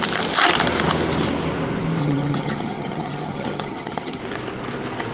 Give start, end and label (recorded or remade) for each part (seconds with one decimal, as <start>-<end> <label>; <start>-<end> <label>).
0.0-2.0 recorded; 2.0-4.2 remade; 4.2-5.1 recorded

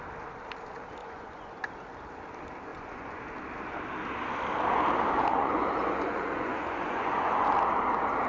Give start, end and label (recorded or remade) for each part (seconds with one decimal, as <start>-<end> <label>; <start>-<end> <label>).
0.0-1.0 recorded; 1.0-1.7 remade; 1.7-2.7 recorded; 2.7-3.2 remade; 3.2-5.3 recorded; 5.3-7.5 remade; 7.5-8.3 recorded